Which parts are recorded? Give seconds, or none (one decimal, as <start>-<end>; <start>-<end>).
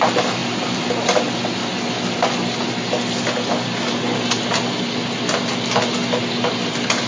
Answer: 0.0-7.1